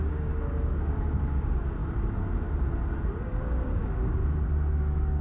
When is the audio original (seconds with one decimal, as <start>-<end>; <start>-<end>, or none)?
1.8-3.0; 4.2-4.8